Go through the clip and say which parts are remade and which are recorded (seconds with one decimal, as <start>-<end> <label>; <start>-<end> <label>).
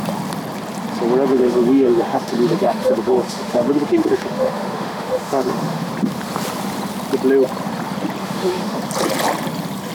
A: 0.0-1.3 recorded; 1.3-5.9 remade; 5.9-8.2 recorded; 8.2-8.8 remade; 8.8-9.9 recorded